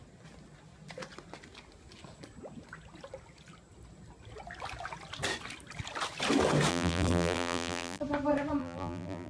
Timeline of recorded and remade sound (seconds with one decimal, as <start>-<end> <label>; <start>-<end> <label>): 0.0-6.7 recorded; 6.7-8.0 remade; 8.0-8.6 recorded; 8.6-9.3 remade